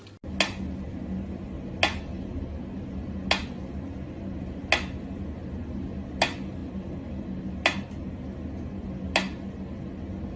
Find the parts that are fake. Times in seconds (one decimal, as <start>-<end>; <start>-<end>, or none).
none